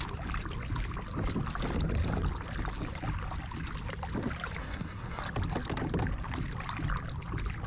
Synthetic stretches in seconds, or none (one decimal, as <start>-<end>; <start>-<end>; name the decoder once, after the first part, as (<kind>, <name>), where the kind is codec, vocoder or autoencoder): 4.6-5.2 (codec, SNAC)